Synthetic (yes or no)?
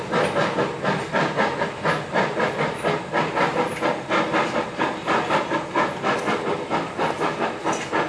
no